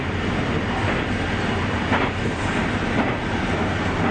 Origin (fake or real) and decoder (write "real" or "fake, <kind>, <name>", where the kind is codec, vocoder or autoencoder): real